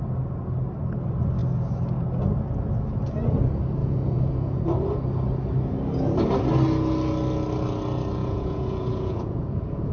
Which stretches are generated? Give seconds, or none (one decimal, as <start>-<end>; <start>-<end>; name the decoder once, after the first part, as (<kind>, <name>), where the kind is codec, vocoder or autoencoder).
3.8-4.6 (vocoder, Vocos); 8.2-9.9